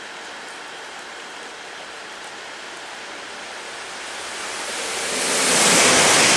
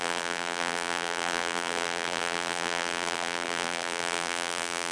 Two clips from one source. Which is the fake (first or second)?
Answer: second